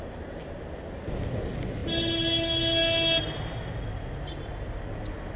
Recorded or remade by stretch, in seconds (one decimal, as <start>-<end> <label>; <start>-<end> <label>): 0.0-5.4 recorded